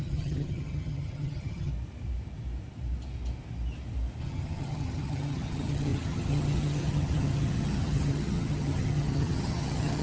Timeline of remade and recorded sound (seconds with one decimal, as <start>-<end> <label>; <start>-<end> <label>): 0.0-1.7 remade; 1.7-4.2 recorded; 4.2-10.0 remade

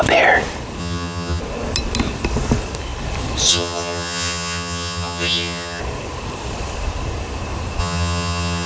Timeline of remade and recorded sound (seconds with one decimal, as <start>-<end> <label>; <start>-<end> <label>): 0.0-0.8 recorded; 0.8-1.4 remade; 1.4-3.5 recorded; 3.5-5.8 remade; 5.8-7.8 recorded; 7.8-8.7 remade